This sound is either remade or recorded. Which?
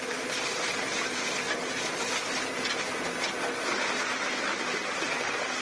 recorded